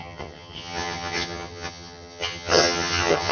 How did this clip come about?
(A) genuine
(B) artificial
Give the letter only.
B